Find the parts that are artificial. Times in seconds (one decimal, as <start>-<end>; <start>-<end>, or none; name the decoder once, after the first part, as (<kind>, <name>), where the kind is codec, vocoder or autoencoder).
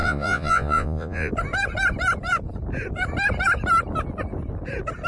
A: 0.0-1.3 (vocoder, Vocos)